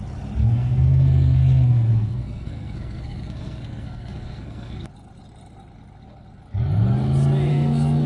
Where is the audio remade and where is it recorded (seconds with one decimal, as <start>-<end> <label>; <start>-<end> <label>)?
0.0-0.4 recorded; 0.4-4.9 remade; 4.9-7.5 recorded; 7.5-8.1 remade